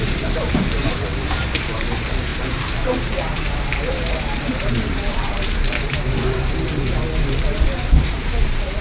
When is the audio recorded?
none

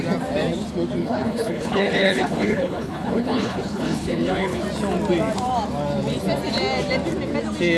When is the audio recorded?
0.0-1.0; 4.6-7.8

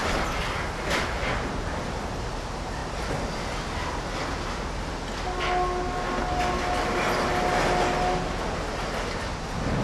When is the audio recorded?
0.0-9.8